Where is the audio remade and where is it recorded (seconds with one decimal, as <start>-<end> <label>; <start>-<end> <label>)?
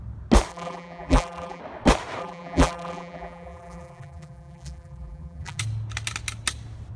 0.0-0.5 recorded; 0.5-1.6 remade; 1.6-2.2 recorded; 2.2-5.6 remade; 5.6-7.0 recorded